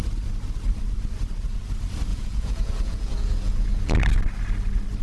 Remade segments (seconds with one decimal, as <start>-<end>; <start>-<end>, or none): 2.1-3.9